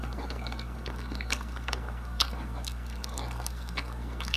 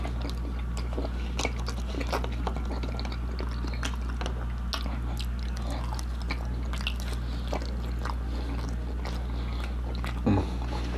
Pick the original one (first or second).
second